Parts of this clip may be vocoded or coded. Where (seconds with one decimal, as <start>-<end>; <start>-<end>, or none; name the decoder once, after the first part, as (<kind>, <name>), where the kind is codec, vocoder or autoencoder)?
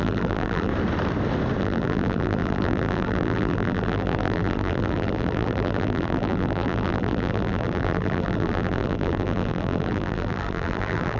0.0-0.7 (vocoder, BigVGAN v2); 1.6-11.2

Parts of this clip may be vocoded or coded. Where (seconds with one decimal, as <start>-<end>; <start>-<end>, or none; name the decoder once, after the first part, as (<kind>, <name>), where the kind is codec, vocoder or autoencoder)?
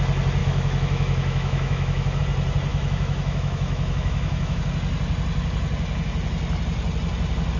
0.4-2.2 (autoencoder, DAC-VAE); 2.7-4.6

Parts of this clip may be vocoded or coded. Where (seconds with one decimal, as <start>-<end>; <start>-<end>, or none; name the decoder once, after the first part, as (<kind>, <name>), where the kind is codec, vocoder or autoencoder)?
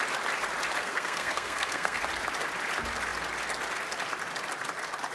0.8-2.0 (codec, SNAC)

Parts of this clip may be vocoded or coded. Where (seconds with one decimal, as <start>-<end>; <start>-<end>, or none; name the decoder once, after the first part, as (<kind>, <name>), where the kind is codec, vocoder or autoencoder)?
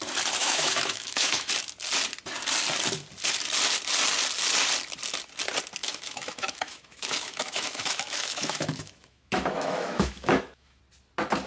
0.4-1.5 (autoencoder, DAC-VAE); 5.8-10.8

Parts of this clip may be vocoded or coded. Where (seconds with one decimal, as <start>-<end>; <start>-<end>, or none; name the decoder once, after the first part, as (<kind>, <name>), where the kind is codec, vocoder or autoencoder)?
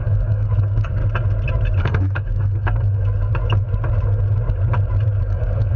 0.0-1.0 (codec, DAC); 1.8-3.3; 5.2-5.8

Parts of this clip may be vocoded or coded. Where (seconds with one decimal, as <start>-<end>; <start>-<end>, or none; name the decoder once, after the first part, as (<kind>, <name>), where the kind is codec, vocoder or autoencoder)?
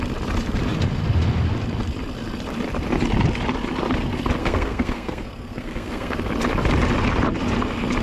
4.4-6.3 (codec, SNAC)